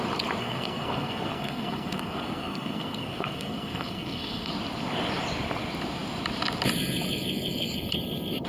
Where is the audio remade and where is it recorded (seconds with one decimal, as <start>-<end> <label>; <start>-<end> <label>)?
0.0-0.4 recorded; 0.4-4.5 remade; 4.5-8.5 recorded